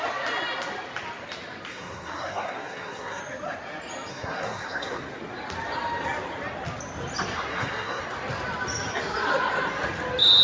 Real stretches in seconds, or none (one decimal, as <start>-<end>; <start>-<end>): 0.0-1.7; 3.2-4.1; 5.0-7.5; 8.0-10.4